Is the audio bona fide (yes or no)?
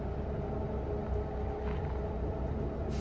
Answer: yes